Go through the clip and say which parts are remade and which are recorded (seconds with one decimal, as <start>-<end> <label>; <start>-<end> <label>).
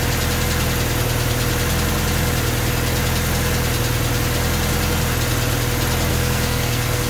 0.0-6.1 recorded; 6.1-7.1 remade